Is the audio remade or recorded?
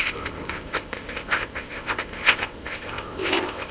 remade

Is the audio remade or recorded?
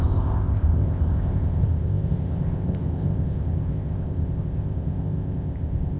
remade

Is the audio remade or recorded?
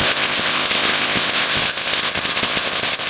remade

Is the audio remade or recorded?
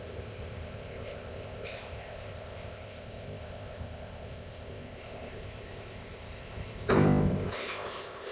remade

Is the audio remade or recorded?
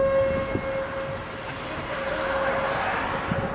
recorded